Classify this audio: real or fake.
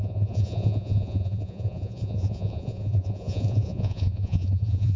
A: fake